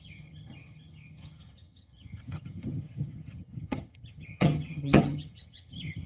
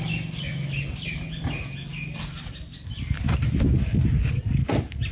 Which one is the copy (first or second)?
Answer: first